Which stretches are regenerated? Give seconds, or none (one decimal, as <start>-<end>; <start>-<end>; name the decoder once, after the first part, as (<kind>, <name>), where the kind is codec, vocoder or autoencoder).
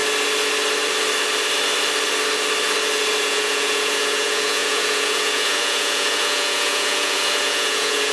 3.2-8.1 (vocoder, Vocos)